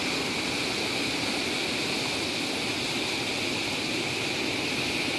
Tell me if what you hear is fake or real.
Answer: real